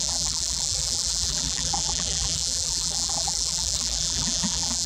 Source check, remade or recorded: remade